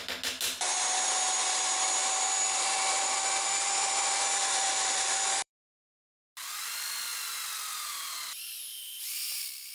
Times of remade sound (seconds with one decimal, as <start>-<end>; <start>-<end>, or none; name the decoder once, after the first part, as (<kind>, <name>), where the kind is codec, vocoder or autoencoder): 2.0-5.5 (vocoder, BigVGAN v2); 8.7-9.7